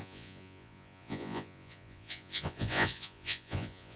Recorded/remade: remade